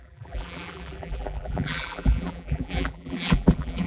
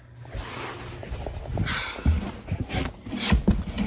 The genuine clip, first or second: second